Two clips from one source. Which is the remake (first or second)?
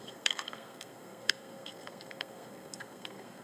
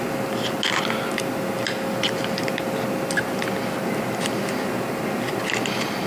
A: first